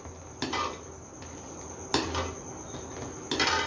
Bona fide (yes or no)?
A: yes